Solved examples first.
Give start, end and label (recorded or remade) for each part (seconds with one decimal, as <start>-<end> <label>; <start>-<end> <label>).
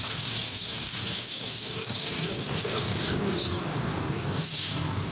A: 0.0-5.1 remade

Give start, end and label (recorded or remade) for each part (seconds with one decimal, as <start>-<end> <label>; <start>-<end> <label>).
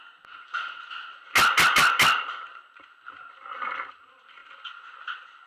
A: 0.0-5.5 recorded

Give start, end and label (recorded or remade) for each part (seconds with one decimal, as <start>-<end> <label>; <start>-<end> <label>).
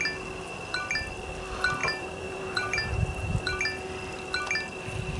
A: 0.0-1.8 recorded; 1.8-3.6 remade; 3.6-5.2 recorded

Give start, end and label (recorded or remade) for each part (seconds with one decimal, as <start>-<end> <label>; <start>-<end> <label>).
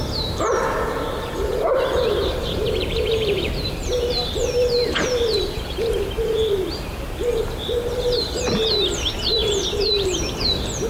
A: 0.0-10.9 remade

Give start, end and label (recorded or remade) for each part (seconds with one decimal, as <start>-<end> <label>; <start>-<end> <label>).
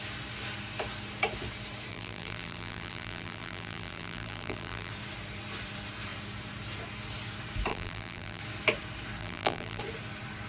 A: 0.0-1.9 recorded; 1.9-4.9 remade; 4.9-7.7 recorded; 7.7-8.4 remade; 8.4-9.2 recorded; 9.2-9.8 remade; 9.8-10.5 recorded